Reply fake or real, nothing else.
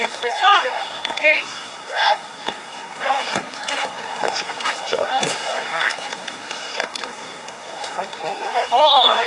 fake